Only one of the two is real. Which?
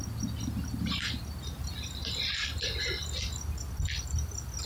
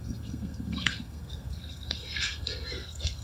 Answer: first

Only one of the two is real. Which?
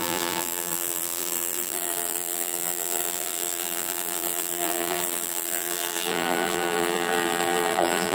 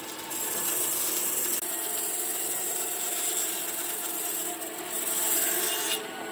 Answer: second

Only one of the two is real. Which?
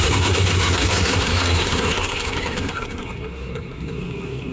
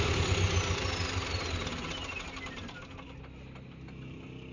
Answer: second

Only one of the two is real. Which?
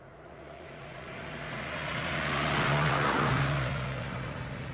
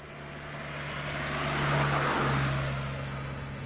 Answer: second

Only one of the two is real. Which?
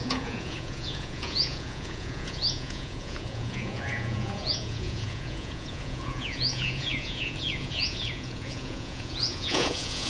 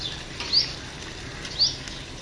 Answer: second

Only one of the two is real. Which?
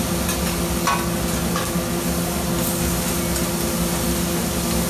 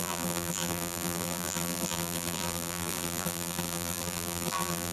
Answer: first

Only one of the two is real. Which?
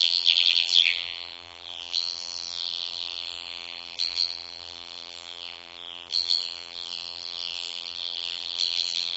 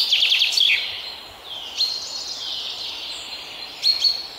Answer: second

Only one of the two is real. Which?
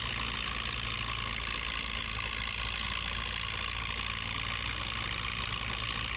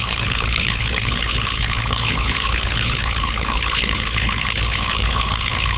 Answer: first